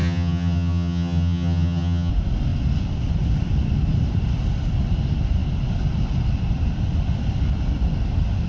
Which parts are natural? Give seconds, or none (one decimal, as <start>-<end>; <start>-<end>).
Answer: 2.1-8.5